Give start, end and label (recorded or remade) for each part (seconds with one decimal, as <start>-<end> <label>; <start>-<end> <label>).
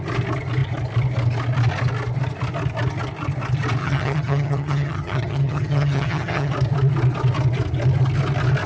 0.0-3.8 recorded; 3.8-6.5 remade; 6.5-8.7 recorded